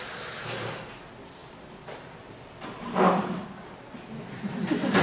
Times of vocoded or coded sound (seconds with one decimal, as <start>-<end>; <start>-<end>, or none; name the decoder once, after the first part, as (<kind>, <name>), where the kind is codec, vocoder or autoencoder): none

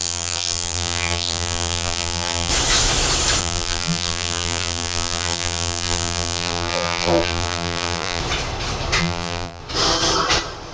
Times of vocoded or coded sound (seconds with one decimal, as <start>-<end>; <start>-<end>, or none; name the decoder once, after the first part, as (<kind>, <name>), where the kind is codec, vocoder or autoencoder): 0.0-2.5 (vocoder, BigVGAN v2); 3.4-8.2; 9.0-9.6

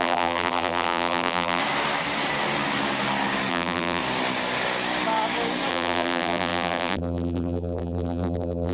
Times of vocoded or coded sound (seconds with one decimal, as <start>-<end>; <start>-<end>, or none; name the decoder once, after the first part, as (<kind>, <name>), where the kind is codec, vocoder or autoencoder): 0.0-1.6 (vocoder, BigVGAN v2); 3.5-4.0; 5.7-8.7

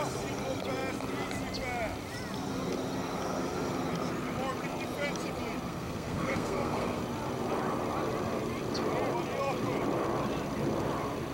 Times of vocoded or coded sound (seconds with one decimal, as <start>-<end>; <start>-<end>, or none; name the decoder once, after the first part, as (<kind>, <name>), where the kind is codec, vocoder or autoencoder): 5.7-7.0 (codec, SNAC)

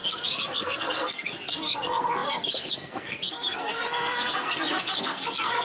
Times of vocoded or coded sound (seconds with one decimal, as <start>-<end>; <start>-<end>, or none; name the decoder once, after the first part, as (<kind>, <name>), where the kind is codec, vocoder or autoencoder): 0.0-5.6 (codec, SNAC)